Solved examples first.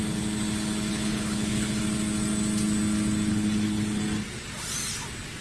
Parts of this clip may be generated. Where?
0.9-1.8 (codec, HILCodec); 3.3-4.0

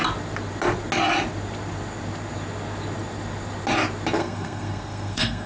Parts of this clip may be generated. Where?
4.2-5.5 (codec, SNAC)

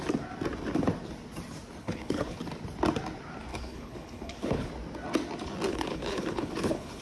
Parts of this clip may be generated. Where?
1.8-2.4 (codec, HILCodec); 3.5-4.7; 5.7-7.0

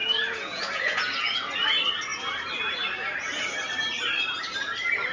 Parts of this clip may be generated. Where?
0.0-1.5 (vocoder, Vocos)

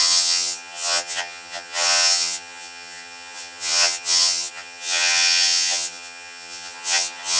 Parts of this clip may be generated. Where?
0.0-7.4 (vocoder, HiFi-GAN)

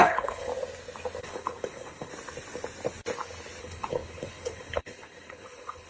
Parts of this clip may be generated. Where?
0.0-0.5 (codec, HILCodec); 1.2-2.1; 3.6-5.9

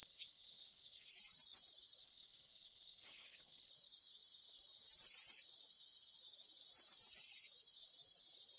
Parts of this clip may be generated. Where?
0.0-1.1 (codec, DAC); 2.0-3.7

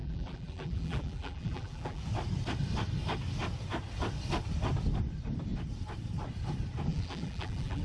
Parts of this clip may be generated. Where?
0.0-2.0 (vocoder, BigVGAN v2); 6.9-7.8